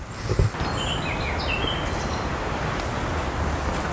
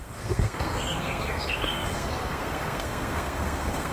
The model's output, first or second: second